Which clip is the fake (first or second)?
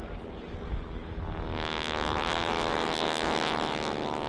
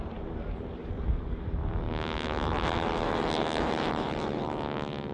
second